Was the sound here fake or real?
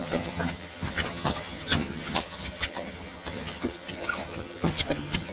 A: fake